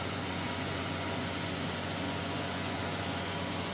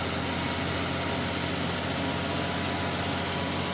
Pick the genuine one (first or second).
second